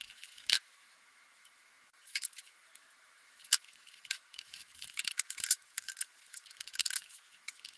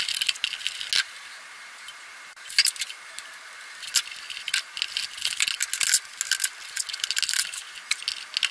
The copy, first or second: first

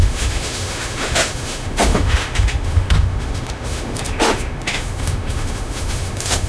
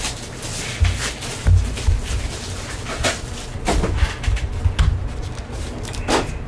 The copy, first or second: first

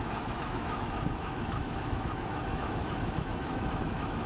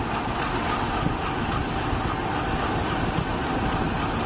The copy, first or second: first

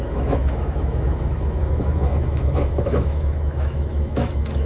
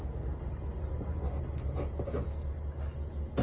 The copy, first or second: first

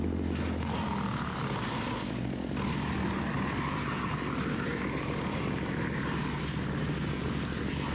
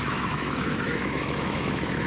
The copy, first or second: second